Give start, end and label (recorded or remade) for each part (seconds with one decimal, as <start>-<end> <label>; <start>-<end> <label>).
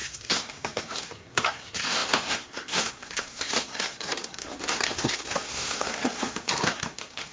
0.0-7.3 remade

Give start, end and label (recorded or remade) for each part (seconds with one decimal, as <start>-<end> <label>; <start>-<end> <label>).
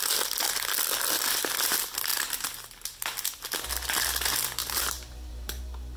0.0-4.6 recorded; 4.6-5.6 remade; 5.6-6.0 recorded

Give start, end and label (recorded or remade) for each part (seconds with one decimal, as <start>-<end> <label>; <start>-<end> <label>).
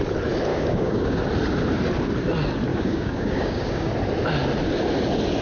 0.0-0.5 recorded; 0.5-1.2 remade; 1.2-2.7 recorded; 2.7-3.9 remade; 3.9-5.4 recorded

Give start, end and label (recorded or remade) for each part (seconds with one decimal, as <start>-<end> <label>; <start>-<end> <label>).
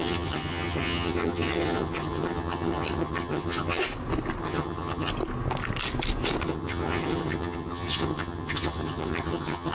0.0-3.8 remade; 3.8-4.4 recorded; 4.4-5.1 remade; 5.1-6.4 recorded; 6.4-9.7 remade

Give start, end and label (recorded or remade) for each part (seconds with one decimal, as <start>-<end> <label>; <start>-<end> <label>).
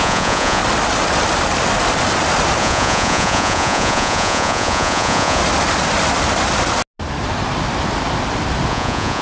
0.0-0.6 remade; 0.6-2.6 recorded; 2.6-5.4 remade; 5.4-8.7 recorded; 8.7-9.2 remade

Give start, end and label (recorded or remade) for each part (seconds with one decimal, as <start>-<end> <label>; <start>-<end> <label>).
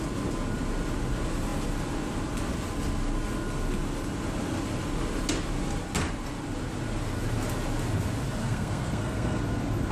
0.0-8.4 recorded; 8.4-9.4 remade; 9.4-9.9 recorded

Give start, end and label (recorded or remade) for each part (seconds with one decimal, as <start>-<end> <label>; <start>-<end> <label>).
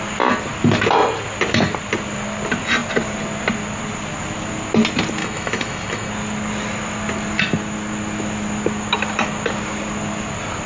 0.0-5.2 recorded; 5.2-6.1 remade; 6.1-10.7 recorded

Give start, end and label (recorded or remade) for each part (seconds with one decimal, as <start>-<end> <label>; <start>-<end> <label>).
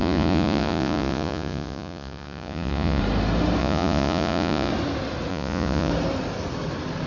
0.0-3.0 remade; 3.0-3.6 recorded; 3.6-4.7 remade; 4.7-5.3 recorded; 5.3-5.9 remade; 5.9-7.1 recorded